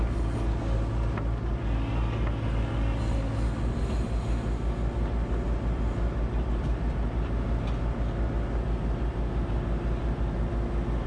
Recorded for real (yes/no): yes